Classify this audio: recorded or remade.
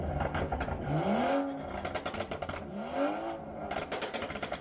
recorded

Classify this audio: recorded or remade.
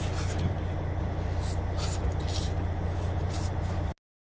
recorded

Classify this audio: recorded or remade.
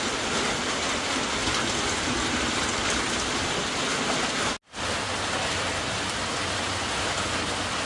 recorded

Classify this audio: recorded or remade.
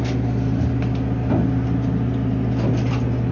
recorded